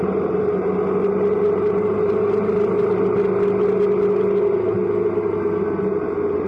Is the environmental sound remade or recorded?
recorded